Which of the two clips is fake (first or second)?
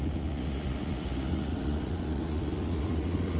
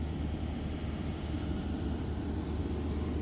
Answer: first